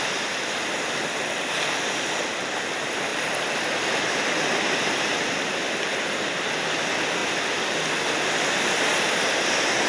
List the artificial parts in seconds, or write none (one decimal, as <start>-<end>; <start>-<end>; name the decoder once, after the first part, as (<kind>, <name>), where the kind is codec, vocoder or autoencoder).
3.1-5.8 (vocoder, BigVGAN v2)